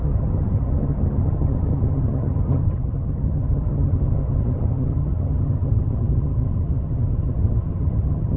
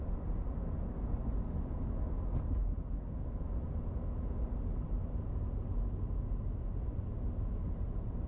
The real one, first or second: second